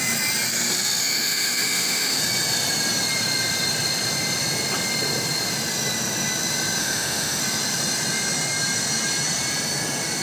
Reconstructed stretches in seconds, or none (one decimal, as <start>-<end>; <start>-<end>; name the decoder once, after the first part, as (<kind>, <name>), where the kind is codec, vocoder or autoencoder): 1.0-2.2 (autoencoder, DAC-VAE); 6.8-7.4